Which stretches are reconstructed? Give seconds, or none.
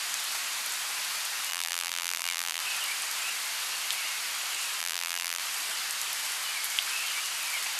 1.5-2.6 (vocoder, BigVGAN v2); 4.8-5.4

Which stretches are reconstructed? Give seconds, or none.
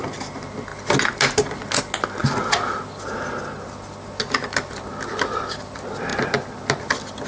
none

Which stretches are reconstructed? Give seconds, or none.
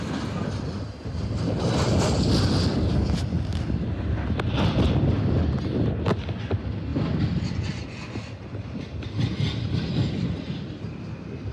6.9-7.8 (vocoder, BigVGAN v2)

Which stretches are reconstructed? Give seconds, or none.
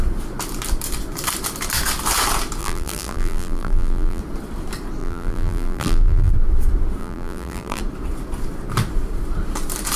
2.6-4.2 (vocoder, BigVGAN v2); 5.0-6.3; 7.0-7.8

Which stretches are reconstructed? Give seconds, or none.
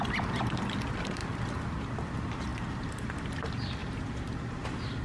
1.2-1.9 (vocoder, BigVGAN v2); 3.8-4.5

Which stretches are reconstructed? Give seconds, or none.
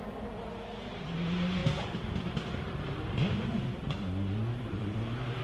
1.6-3.5 (vocoder, BigVGAN v2); 4.5-5.4